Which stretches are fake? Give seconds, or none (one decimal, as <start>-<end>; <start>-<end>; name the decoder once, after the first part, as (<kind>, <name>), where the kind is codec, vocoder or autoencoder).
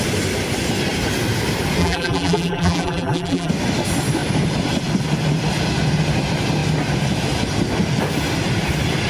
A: 1.8-3.5 (vocoder, BigVGAN v2)